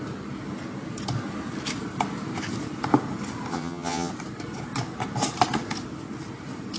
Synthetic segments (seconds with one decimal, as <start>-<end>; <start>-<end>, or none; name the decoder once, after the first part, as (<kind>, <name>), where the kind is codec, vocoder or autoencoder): 3.5-4.1 (vocoder, HiFi-GAN)